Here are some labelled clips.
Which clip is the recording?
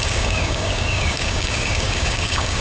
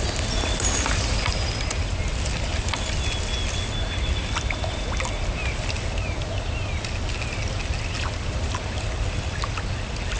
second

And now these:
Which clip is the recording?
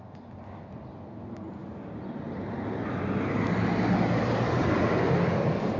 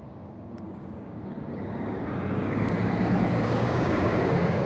first